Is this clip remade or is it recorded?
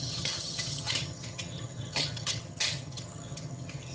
remade